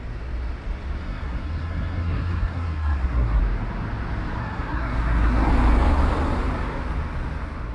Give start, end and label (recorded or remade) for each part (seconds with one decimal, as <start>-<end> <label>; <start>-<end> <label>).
0.0-1.0 recorded; 1.0-3.4 remade; 3.4-4.4 recorded; 4.4-5.5 remade; 5.5-7.7 recorded